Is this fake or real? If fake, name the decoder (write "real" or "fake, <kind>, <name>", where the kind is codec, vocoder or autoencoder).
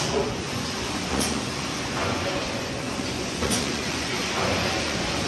fake, vocoder, Vocos